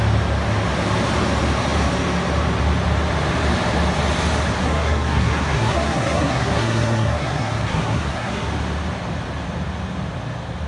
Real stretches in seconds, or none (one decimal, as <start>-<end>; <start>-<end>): 0.0-4.6; 8.5-10.7

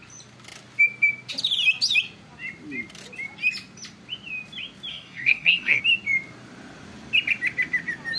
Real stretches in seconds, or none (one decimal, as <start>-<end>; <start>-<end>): 0.0-4.9; 5.8-8.2

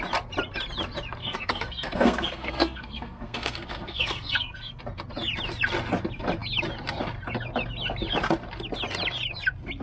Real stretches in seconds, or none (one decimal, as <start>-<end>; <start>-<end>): 0.0-1.2; 4.8-9.8

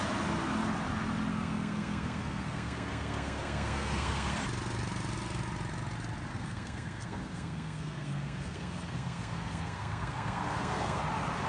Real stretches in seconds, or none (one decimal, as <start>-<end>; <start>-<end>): 0.0-1.3; 4.4-6.3; 11.0-11.5

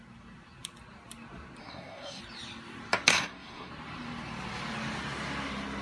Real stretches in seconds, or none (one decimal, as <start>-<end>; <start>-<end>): 0.0-1.6; 2.2-3.1; 3.7-5.8